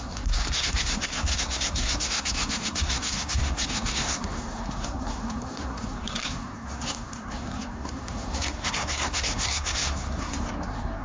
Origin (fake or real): fake